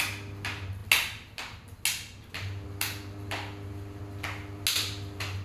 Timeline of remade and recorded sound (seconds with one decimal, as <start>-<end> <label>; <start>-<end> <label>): 0.0-5.4 recorded

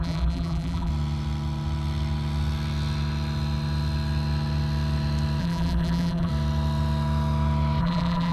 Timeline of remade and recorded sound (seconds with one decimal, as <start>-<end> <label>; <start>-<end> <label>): 0.0-0.9 remade; 0.9-5.4 recorded; 5.4-6.3 remade; 6.3-7.8 recorded; 7.8-8.3 remade

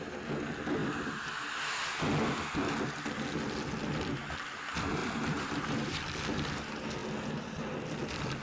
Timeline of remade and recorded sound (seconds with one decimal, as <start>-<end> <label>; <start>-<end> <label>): 0.0-5.0 recorded; 5.0-6.0 remade; 6.0-8.4 recorded

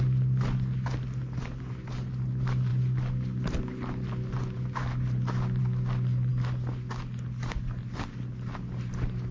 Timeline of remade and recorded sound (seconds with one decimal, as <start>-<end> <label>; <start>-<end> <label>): 0.0-9.3 recorded

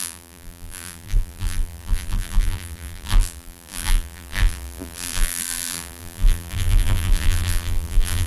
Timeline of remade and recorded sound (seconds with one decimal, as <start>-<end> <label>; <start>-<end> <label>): 0.0-8.3 remade

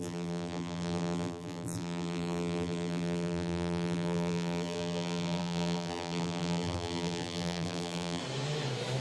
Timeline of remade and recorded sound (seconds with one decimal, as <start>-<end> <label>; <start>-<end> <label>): 0.0-8.2 remade; 8.2-9.0 recorded

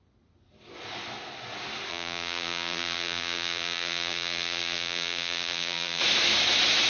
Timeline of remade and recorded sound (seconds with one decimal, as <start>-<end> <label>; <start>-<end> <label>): 0.0-1.9 recorded; 1.9-6.0 remade; 6.0-6.9 recorded

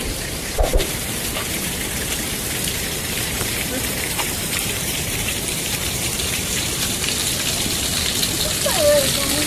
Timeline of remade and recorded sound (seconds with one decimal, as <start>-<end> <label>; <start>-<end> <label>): 0.0-7.2 remade; 7.2-9.5 recorded